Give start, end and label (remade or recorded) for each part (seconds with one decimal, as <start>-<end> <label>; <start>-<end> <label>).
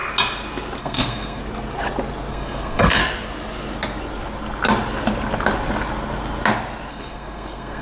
0.0-0.8 recorded; 0.8-1.4 remade; 1.4-2.3 recorded; 2.3-3.0 remade; 3.0-6.9 recorded; 6.9-7.8 remade